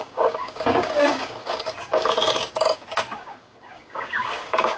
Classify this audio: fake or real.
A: fake